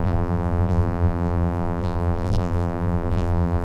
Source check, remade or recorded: remade